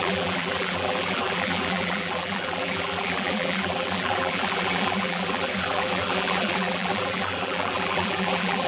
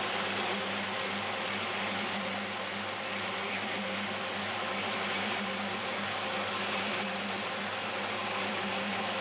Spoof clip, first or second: first